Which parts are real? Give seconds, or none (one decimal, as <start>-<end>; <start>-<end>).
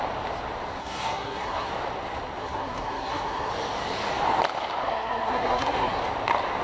0.0-0.8; 1.7-2.4; 3.5-4.8; 6.0-6.6